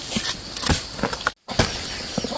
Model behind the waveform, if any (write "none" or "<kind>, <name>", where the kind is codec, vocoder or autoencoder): none